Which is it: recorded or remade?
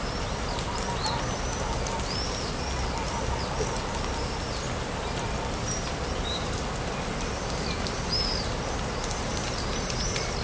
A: recorded